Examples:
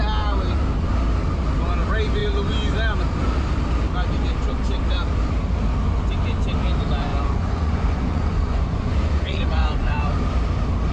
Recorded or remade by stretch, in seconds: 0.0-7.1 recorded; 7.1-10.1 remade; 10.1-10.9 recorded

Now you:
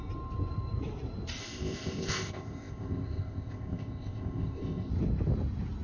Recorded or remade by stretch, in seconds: 0.0-1.4 recorded; 1.4-4.9 remade; 4.9-5.8 recorded

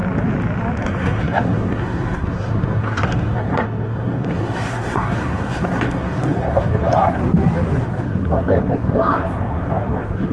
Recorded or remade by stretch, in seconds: 0.0-0.8 recorded; 0.8-7.2 remade; 7.2-7.8 recorded; 7.8-10.3 remade